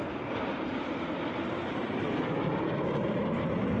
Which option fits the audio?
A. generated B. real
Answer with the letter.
A